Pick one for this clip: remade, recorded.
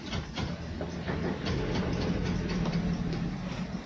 remade